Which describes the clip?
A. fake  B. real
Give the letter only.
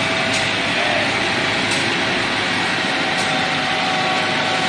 B